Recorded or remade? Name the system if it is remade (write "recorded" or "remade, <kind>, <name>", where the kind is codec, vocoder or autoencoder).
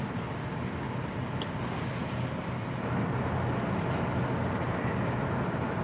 recorded